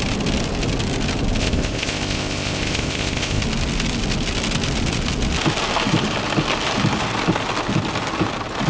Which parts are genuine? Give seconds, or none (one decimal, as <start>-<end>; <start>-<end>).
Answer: 0.0-1.4; 3.4-8.7